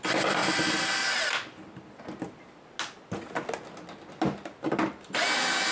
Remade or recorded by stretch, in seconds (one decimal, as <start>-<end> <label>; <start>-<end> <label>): 0.0-5.7 recorded